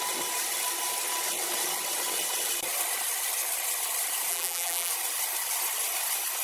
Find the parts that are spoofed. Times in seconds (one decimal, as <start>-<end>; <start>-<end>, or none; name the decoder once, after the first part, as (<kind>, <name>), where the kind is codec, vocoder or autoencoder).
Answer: 4.3-4.9 (vocoder, BigVGAN v2)